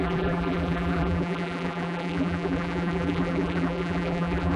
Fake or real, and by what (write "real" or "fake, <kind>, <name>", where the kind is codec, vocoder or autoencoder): fake, vocoder, BigVGAN v2